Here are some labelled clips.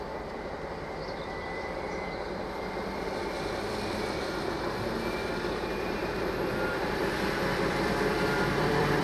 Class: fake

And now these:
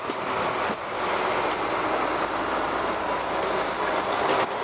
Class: real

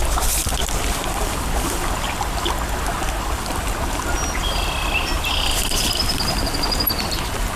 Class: real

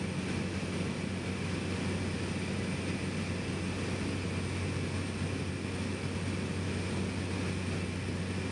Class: real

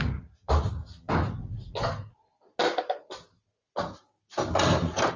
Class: real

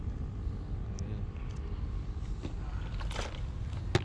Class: real